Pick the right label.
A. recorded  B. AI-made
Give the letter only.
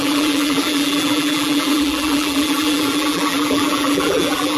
B